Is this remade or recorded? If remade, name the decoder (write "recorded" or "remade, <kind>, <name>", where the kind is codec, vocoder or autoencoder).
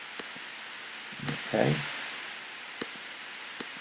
recorded